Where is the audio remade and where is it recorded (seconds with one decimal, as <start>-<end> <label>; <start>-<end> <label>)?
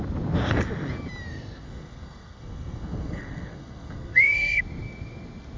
0.0-1.3 recorded; 1.3-4.6 remade; 4.6-5.6 recorded